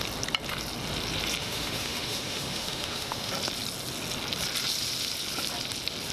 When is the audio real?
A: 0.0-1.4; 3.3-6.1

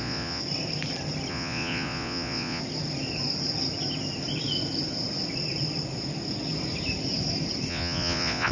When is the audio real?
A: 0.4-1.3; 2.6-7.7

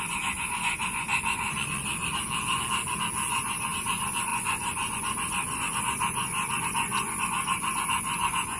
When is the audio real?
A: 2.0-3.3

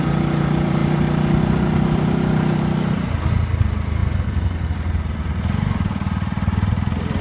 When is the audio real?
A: 0.0-7.2